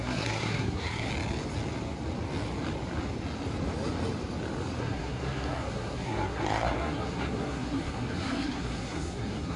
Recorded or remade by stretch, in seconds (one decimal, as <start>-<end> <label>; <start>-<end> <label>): 0.0-1.1 remade; 1.1-4.8 recorded; 4.8-9.6 remade